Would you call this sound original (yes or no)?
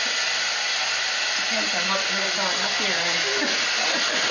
yes